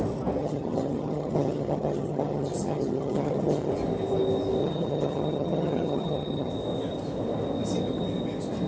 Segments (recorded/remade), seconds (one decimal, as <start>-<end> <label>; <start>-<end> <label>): 0.0-0.4 recorded; 0.4-3.7 remade; 3.7-4.6 recorded; 4.6-6.5 remade; 6.5-8.7 recorded